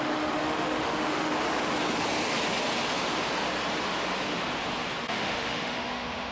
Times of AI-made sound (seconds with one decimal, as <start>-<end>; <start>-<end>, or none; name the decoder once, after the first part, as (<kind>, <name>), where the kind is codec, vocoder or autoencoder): 0.0-1.3 (autoencoder, DAC-VAE); 5.1-6.3